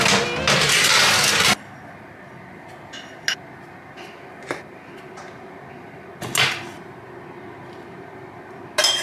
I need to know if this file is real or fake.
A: real